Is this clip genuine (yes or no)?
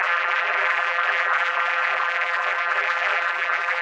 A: no